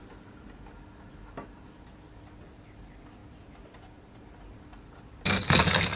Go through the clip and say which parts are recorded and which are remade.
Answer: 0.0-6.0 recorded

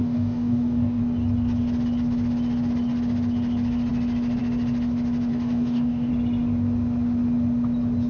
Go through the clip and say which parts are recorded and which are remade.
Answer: 0.0-1.0 remade; 1.0-5.3 recorded; 5.3-6.1 remade; 6.1-8.1 recorded

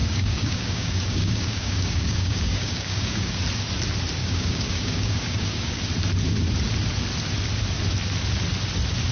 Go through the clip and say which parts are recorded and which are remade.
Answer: 0.0-3.4 remade; 3.4-4.2 recorded; 4.2-5.8 remade; 5.8-9.1 recorded

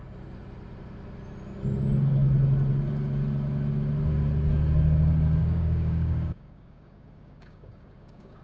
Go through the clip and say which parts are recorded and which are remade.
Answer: 0.0-5.4 recorded; 5.4-8.4 remade

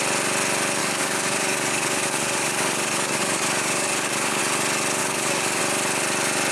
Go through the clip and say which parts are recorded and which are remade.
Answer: 0.0-0.8 recorded; 0.8-4.4 remade; 4.4-5.0 recorded; 5.0-5.6 remade; 5.6-6.5 recorded

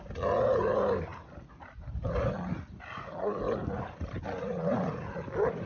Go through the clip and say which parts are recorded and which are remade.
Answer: 0.0-5.7 recorded

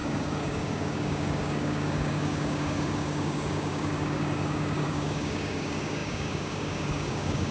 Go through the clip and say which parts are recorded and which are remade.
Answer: 0.0-7.5 remade

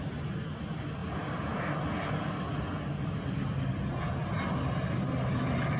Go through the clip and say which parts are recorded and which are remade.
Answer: 0.0-5.8 recorded